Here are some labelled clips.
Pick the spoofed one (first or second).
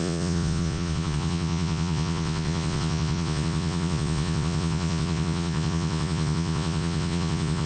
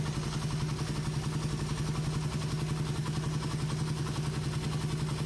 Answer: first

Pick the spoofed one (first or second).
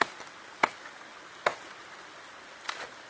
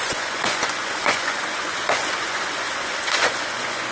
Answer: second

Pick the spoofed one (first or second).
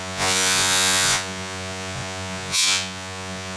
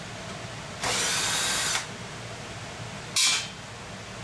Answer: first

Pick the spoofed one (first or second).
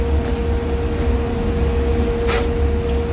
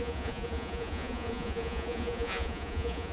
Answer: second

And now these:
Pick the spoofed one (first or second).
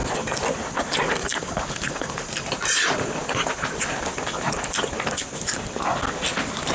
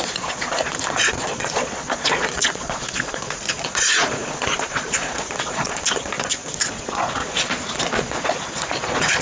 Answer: second